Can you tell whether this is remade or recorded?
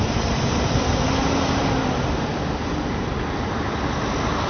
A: recorded